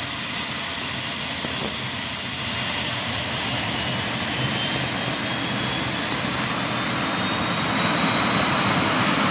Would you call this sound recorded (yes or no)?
yes